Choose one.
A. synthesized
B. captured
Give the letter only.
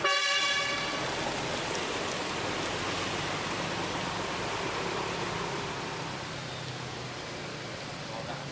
B